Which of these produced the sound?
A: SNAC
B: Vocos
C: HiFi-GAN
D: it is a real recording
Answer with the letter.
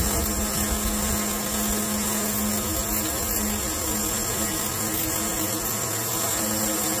D